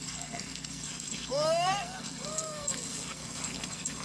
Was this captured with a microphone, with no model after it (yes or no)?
no